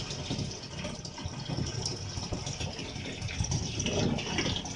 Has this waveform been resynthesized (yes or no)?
no